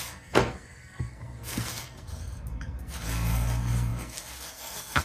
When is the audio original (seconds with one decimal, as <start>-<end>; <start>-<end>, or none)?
none